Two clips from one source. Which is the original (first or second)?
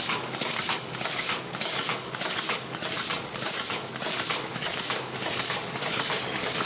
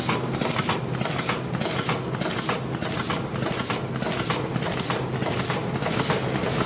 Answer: second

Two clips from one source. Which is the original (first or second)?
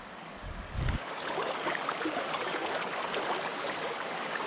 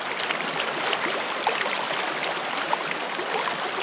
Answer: second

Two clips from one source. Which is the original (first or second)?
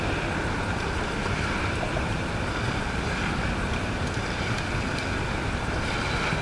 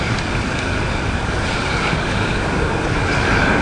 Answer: first